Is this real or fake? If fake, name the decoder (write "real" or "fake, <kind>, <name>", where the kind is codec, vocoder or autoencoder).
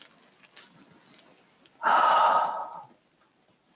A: real